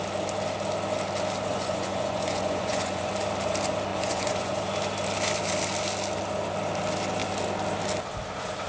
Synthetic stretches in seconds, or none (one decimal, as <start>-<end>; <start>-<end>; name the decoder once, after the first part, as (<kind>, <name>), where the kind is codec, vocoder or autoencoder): 1.5-3.1 (vocoder, Vocos); 3.9-4.6